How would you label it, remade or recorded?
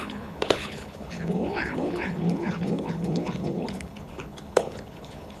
remade